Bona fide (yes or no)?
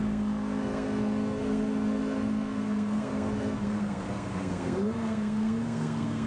no